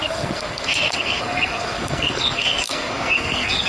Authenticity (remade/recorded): remade